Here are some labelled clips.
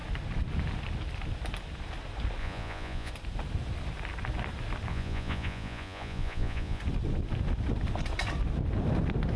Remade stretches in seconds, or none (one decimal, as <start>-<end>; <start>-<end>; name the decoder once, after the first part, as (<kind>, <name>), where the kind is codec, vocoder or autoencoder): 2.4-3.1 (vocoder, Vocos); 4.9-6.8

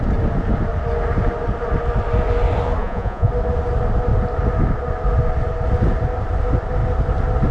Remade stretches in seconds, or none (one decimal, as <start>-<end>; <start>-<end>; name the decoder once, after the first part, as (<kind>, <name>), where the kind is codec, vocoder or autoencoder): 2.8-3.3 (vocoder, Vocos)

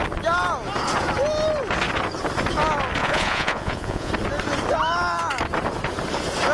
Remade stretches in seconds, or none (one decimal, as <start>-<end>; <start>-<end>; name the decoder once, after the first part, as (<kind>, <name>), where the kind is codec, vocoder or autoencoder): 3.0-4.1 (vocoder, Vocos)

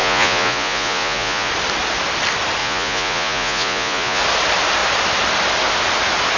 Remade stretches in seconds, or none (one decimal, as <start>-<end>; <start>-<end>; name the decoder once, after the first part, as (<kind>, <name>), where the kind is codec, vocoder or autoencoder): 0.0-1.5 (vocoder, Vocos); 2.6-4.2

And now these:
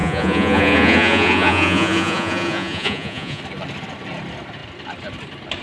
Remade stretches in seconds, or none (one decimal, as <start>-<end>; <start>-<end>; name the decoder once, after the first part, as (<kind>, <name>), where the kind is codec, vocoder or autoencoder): 0.0-3.4 (vocoder, Vocos)

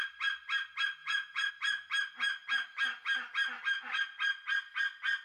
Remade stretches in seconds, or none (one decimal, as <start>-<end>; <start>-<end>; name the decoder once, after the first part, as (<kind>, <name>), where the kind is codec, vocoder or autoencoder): 1.0-1.5 (vocoder, Vocos)